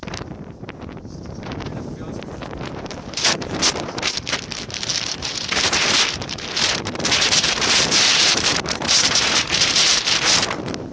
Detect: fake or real fake